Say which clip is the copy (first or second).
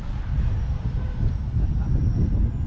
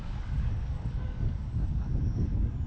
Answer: second